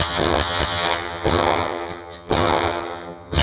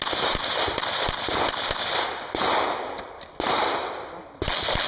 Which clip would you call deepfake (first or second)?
first